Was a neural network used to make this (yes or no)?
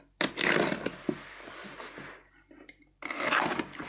no